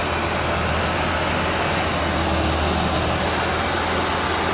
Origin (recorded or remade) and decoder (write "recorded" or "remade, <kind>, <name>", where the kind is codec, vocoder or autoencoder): recorded